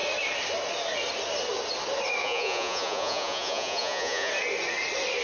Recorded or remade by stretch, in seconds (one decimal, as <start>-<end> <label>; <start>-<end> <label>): 0.0-2.2 recorded; 2.2-4.3 remade; 4.3-5.2 recorded